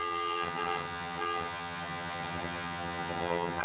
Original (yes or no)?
no